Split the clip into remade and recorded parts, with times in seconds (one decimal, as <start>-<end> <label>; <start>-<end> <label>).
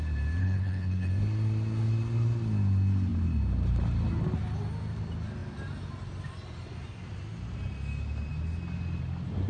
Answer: 0.0-0.4 recorded; 0.4-1.1 remade; 1.1-9.5 recorded